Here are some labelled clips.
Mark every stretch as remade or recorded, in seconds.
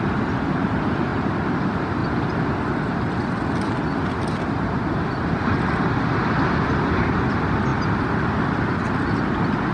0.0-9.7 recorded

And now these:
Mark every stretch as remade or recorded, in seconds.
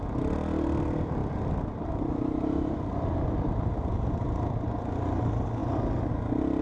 0.0-1.2 recorded; 1.2-5.1 remade; 5.1-6.6 recorded